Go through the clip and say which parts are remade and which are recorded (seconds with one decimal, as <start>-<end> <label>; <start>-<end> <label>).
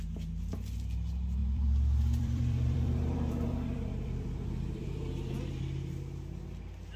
0.0-1.4 recorded; 1.4-5.6 remade; 5.6-7.0 recorded